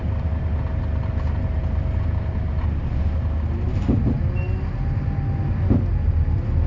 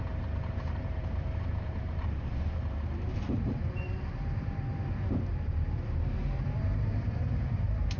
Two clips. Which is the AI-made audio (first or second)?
second